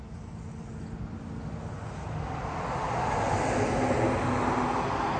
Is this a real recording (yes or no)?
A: yes